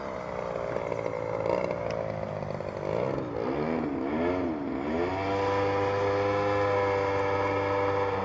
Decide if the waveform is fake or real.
real